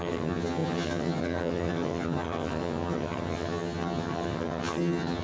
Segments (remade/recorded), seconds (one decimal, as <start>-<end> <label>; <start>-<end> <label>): 0.0-5.2 remade